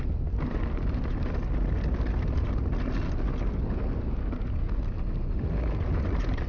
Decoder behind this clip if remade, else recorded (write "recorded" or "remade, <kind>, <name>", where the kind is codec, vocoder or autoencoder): recorded